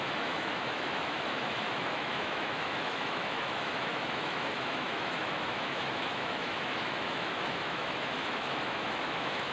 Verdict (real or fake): fake